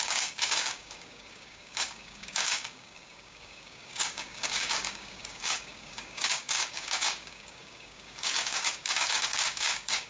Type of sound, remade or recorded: remade